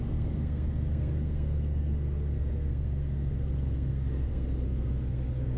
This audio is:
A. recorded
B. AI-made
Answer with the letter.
B